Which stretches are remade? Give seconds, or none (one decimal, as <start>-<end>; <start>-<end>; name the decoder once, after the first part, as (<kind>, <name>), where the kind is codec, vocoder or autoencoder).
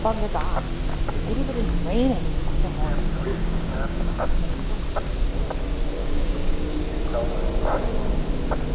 3.3-4.8 (codec, DAC); 6.0-6.8